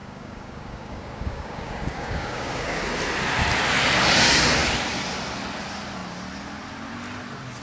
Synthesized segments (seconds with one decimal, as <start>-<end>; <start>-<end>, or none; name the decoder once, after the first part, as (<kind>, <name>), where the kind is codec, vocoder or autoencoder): 0.0-2.8 (codec, DAC)